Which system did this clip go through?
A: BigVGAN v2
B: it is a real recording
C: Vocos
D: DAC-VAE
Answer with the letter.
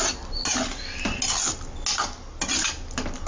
B